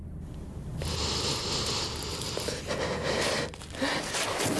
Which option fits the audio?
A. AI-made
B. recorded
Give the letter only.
B